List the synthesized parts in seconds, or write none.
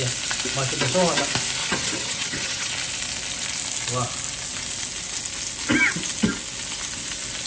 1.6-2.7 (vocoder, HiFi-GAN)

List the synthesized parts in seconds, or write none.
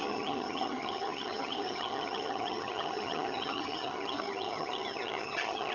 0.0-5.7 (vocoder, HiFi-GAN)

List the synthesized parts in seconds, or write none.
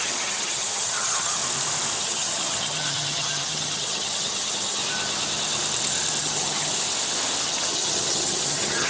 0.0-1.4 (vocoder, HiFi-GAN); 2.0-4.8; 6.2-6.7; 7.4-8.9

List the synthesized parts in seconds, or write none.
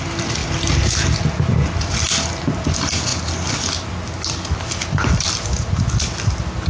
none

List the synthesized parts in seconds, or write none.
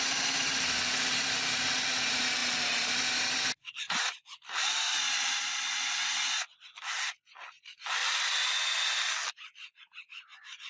none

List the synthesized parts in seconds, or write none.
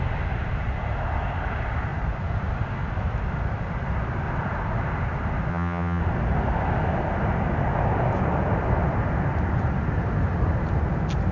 5.5-6.0 (vocoder, HiFi-GAN)